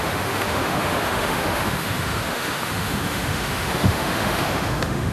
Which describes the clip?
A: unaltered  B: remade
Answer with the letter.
B